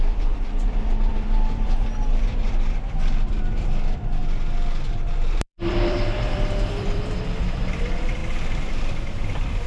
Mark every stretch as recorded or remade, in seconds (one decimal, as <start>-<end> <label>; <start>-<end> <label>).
0.0-4.2 remade; 4.2-4.9 recorded; 4.9-8.2 remade; 8.2-8.7 recorded; 8.7-9.7 remade

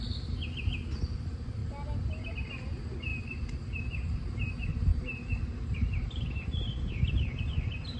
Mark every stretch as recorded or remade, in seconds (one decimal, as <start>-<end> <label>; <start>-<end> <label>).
0.0-4.9 recorded; 4.9-6.9 remade; 6.9-8.0 recorded

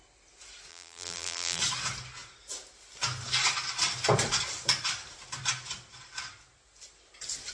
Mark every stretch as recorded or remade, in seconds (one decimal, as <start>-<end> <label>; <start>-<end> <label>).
0.0-0.7 recorded; 0.7-1.6 remade; 1.6-7.5 recorded

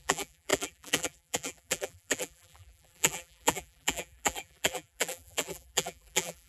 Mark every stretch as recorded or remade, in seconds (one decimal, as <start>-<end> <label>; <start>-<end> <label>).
0.0-6.5 remade

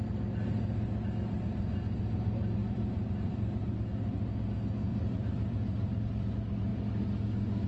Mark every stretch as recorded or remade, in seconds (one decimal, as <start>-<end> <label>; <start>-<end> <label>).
0.0-2.6 recorded; 2.6-3.7 remade; 3.7-4.9 recorded; 4.9-6.3 remade; 6.3-7.7 recorded

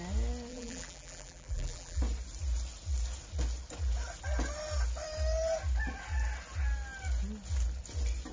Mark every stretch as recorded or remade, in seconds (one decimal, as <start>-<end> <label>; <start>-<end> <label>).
0.0-0.5 recorded; 0.5-2.0 remade; 2.0-8.3 recorded